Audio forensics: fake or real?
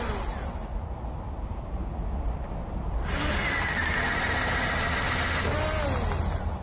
real